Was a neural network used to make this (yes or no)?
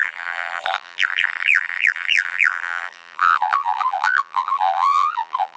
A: yes